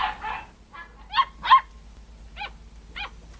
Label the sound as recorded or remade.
recorded